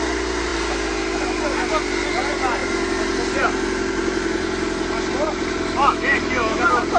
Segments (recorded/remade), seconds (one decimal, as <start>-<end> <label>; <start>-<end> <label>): 0.0-5.8 recorded; 5.8-6.6 remade; 6.6-7.0 recorded